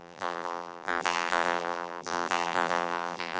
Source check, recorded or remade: remade